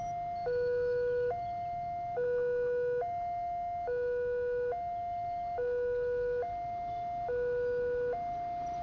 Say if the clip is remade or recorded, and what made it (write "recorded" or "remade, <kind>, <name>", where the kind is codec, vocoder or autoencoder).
recorded